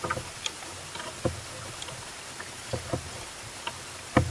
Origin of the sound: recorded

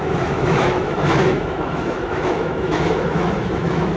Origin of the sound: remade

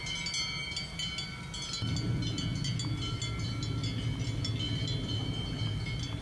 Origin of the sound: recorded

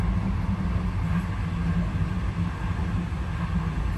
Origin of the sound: recorded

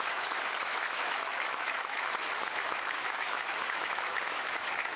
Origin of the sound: remade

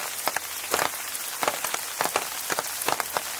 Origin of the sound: recorded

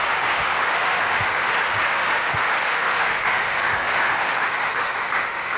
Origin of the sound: remade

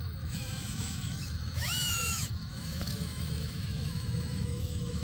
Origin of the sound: remade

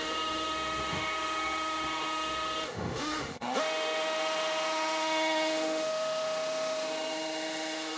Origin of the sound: remade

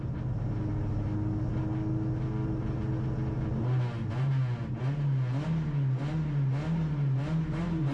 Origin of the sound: recorded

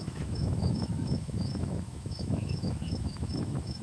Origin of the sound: remade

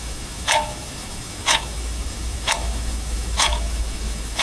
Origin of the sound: remade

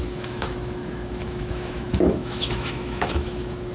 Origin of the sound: remade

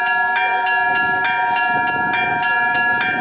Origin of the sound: recorded